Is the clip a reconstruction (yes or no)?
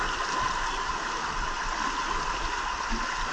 no